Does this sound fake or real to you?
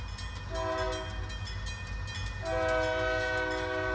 real